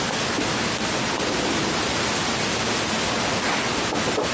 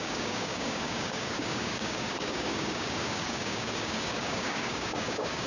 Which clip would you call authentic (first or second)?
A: first